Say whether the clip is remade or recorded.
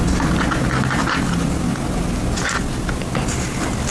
recorded